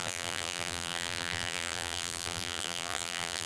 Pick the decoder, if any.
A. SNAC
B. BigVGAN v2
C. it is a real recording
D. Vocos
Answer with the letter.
B